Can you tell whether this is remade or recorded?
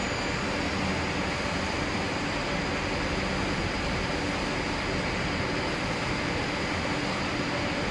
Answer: recorded